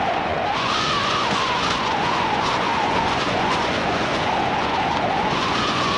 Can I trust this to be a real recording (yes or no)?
no